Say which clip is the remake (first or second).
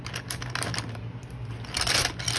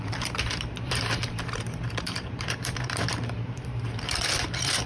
second